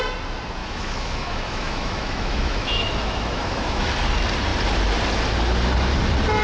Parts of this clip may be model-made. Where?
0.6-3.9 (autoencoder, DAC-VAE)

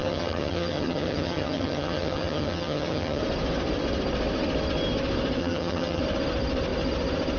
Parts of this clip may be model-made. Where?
0.0-3.2 (vocoder, HiFi-GAN); 5.4-6.0

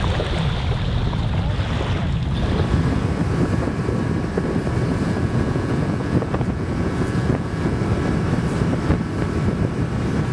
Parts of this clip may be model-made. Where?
4.9-7.8 (vocoder, Vocos)

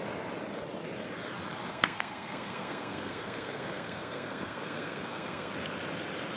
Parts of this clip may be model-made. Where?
1.7-5.5 (codec, SNAC)

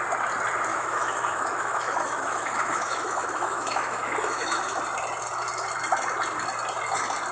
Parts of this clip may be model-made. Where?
0.7-4.8 (autoencoder, DAC-VAE)

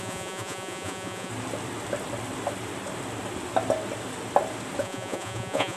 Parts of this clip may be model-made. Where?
0.0-1.3 (vocoder, Vocos); 4.8-5.8

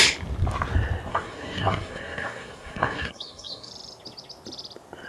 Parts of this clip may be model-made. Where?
1.1-3.7 (codec, SNAC)